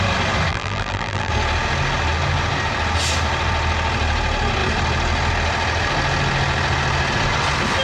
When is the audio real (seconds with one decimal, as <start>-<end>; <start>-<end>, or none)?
0.0-0.5; 1.3-7.8